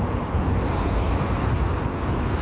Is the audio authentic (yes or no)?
yes